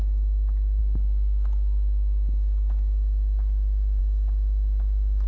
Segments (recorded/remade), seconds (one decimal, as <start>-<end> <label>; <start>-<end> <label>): 0.0-5.3 recorded